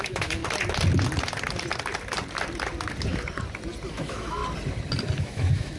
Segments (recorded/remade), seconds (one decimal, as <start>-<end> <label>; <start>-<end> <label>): 0.0-0.4 remade; 0.4-3.9 recorded; 3.9-4.4 remade; 4.4-5.2 recorded; 5.2-5.8 remade